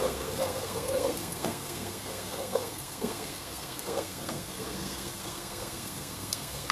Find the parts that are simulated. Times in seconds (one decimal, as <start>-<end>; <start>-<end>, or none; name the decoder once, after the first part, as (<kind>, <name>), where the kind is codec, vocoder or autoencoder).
0.0-6.7 (codec, SNAC)